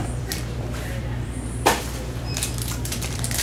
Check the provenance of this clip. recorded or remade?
remade